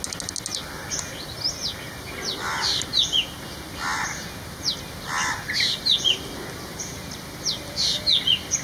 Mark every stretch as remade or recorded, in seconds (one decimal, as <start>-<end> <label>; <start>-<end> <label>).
0.0-8.6 recorded